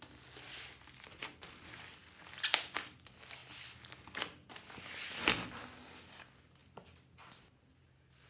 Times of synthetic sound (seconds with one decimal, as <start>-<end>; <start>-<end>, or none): none